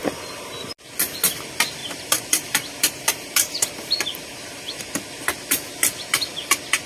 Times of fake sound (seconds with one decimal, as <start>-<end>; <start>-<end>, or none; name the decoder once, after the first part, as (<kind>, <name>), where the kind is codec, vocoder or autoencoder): 0.0-0.5 (vocoder, BigVGAN v2); 1.8-4.8